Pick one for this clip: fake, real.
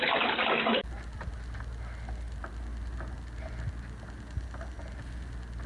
real